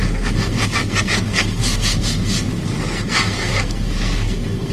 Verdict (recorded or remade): remade